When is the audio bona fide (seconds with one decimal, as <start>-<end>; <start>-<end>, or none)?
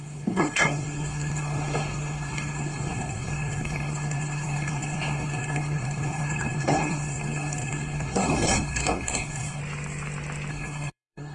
9.6-10.5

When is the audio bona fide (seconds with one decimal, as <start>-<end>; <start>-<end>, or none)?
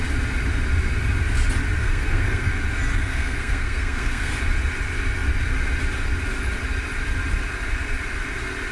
0.0-1.8; 2.5-2.9; 4.3-8.7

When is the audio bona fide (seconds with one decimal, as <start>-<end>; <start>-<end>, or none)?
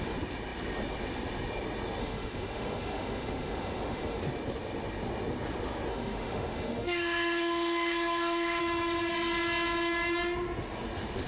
0.0-2.0; 4.2-5.9; 8.6-11.3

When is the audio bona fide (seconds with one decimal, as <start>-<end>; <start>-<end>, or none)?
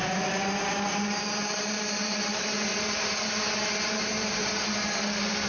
0.0-5.5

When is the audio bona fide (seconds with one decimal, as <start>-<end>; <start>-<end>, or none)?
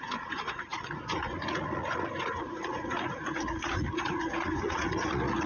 none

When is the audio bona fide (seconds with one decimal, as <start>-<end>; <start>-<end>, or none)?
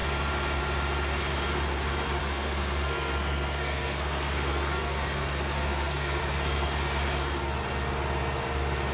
0.0-2.2; 6.2-8.9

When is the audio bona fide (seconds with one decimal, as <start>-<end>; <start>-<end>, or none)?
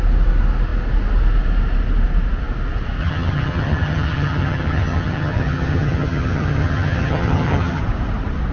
0.0-3.0; 7.8-8.5